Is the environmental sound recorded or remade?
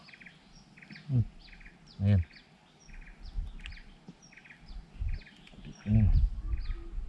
recorded